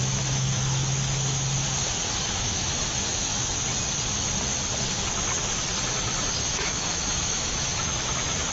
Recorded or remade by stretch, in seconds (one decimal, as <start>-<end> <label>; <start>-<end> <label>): 0.0-0.6 remade; 0.6-2.1 recorded; 2.1-3.3 remade; 3.3-6.5 recorded; 6.5-8.5 remade